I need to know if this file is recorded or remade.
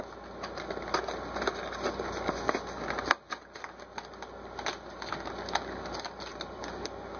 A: recorded